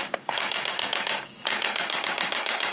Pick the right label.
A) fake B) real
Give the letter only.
A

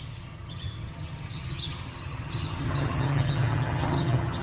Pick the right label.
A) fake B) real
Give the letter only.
A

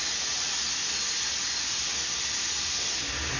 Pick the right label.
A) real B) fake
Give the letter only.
A